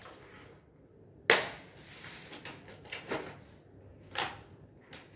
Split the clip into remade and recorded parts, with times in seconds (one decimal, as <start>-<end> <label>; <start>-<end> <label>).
0.0-0.7 remade; 0.7-1.7 recorded; 1.7-2.7 remade; 2.7-3.9 recorded; 3.9-4.8 remade; 4.8-5.2 recorded